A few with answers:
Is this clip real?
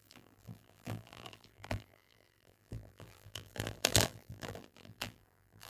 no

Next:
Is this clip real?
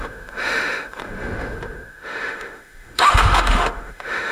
no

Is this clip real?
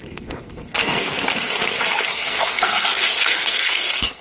no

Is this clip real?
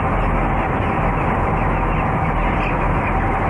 yes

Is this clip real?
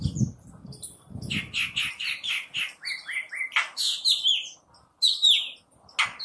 yes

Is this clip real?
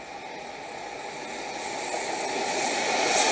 yes